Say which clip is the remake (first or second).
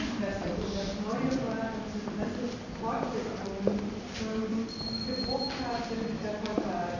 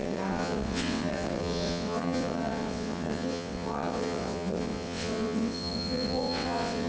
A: second